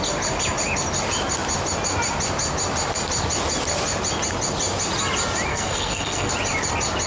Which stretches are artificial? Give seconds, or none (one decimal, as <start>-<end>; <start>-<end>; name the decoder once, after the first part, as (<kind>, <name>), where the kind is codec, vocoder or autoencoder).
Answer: 5.5-6.3 (codec, SNAC)